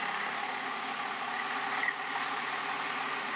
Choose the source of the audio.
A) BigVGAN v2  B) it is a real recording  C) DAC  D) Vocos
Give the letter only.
D